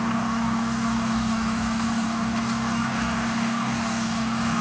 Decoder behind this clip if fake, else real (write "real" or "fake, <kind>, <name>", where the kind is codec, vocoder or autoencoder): fake, codec, DAC